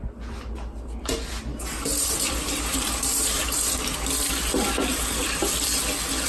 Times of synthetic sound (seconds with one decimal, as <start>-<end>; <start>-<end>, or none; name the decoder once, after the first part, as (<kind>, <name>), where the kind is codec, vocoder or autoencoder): 1.5-4.1 (vocoder, BigVGAN v2); 4.9-5.5